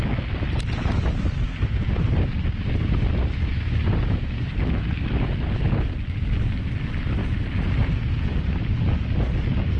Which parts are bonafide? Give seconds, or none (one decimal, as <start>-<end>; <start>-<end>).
0.0-7.2; 8.5-9.8